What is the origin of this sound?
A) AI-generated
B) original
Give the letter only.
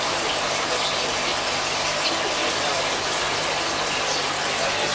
B